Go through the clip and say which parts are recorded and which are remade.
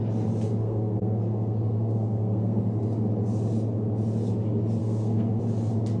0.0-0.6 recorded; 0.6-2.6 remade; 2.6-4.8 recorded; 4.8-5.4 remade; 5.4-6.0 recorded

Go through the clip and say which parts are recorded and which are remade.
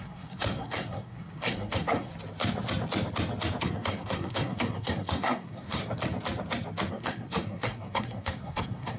0.0-2.1 remade; 2.1-3.6 recorded; 3.6-5.8 remade; 5.8-6.9 recorded; 6.9-9.0 remade